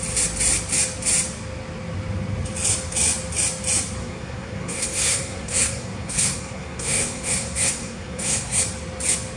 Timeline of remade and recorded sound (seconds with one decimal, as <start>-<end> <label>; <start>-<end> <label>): 0.0-4.0 recorded; 4.0-8.6 remade; 8.6-9.4 recorded

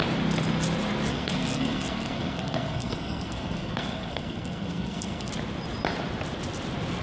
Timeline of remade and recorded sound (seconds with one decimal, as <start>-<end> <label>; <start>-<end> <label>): 0.0-1.1 recorded; 1.1-5.3 remade; 5.3-7.0 recorded